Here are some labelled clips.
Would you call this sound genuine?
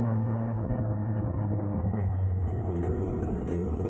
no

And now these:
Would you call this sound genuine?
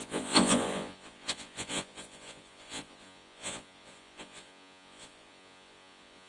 no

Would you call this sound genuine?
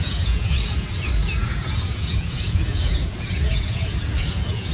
no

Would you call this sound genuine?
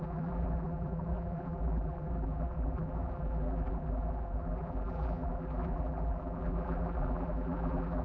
no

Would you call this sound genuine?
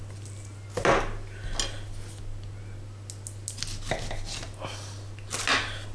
yes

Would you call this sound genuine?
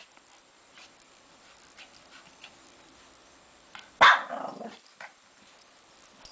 yes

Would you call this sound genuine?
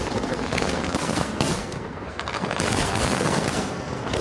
no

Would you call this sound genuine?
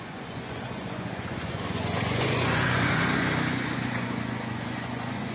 no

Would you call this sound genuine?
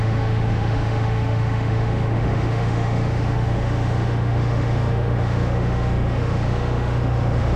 no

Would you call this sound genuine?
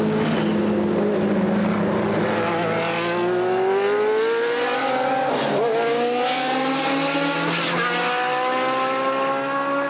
yes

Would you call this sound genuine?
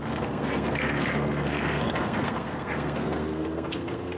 no